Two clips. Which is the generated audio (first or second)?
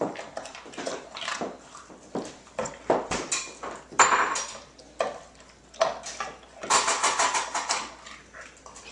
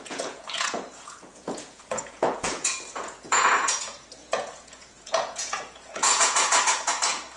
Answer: second